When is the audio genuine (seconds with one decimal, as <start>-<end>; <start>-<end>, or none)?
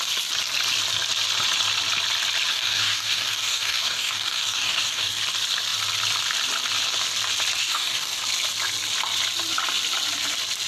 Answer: 0.0-2.5; 5.2-7.6; 8.2-10.7